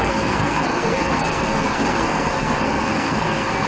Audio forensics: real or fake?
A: fake